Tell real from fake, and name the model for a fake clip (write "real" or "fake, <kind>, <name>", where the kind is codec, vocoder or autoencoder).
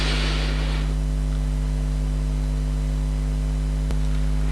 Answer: real